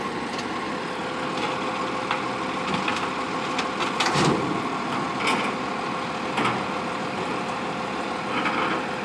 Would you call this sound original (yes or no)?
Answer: yes